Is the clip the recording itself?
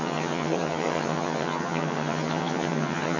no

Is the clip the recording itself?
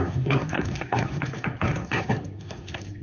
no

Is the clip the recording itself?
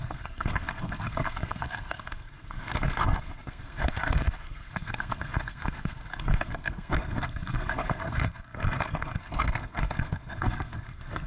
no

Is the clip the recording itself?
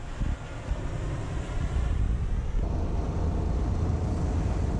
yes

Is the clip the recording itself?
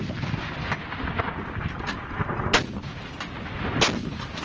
yes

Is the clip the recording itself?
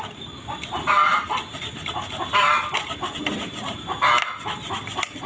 yes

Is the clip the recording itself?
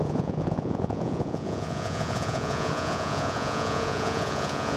no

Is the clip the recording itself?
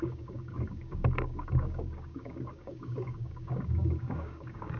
no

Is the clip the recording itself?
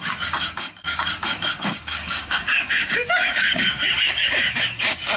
no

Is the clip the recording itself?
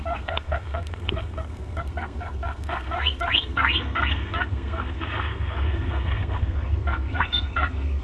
no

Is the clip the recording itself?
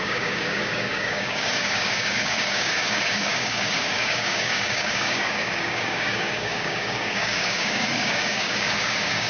no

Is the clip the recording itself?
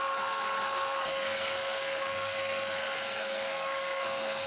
no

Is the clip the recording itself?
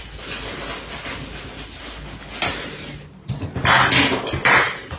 yes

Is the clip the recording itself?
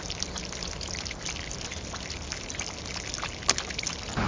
yes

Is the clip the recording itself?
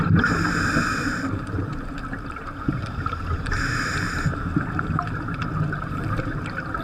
no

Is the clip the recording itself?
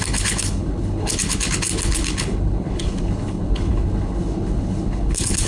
no